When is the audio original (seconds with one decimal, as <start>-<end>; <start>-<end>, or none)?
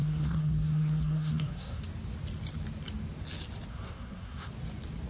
1.8-3.7; 4.5-5.1